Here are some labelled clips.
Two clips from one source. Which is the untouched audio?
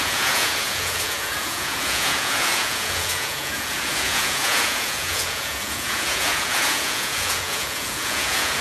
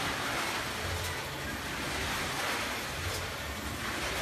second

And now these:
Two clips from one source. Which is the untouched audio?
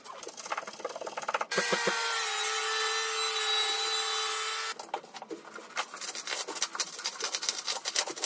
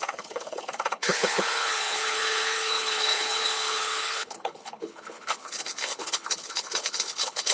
first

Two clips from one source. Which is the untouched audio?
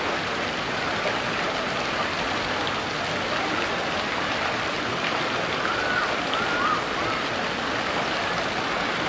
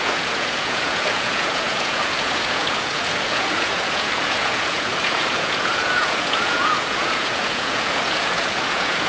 first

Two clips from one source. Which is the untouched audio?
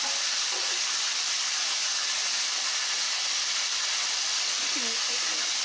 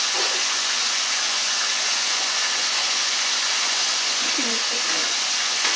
first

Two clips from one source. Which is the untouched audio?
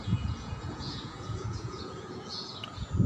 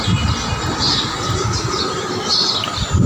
second